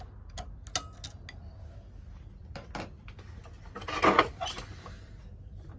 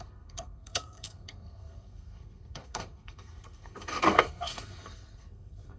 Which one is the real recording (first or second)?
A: first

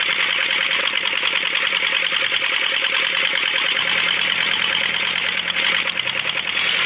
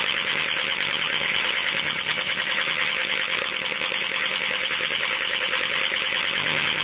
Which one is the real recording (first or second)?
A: first